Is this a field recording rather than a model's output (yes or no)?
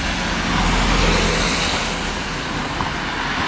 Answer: yes